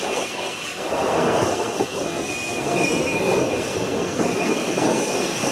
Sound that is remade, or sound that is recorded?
remade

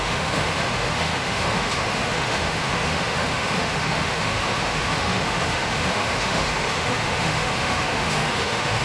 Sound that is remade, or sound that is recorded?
remade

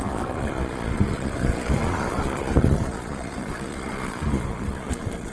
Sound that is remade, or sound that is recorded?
remade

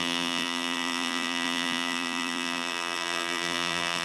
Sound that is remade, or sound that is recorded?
remade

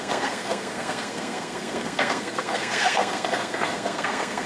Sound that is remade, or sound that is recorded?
remade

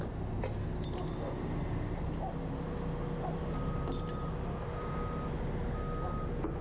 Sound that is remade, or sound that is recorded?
recorded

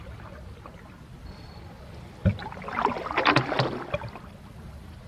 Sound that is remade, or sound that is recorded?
recorded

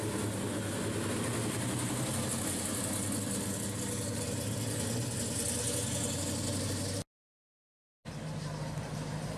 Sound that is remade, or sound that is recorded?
recorded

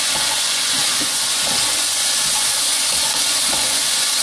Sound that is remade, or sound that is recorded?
remade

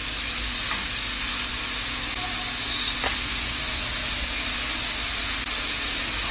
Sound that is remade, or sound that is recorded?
recorded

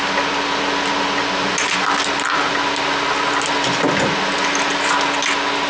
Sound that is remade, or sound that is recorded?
recorded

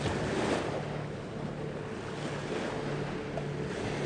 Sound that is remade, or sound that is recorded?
recorded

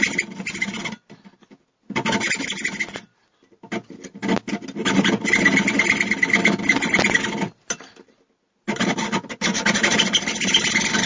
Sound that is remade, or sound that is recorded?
recorded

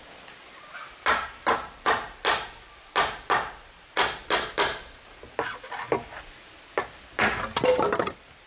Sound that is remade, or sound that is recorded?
recorded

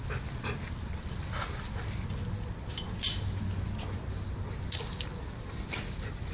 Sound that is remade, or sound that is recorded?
recorded